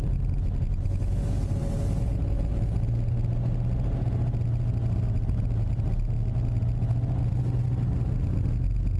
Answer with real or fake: real